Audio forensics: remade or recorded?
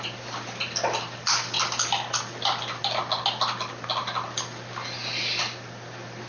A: recorded